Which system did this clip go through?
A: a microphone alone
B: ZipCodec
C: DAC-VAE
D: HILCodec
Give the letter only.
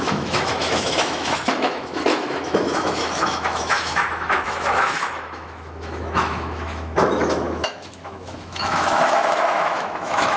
C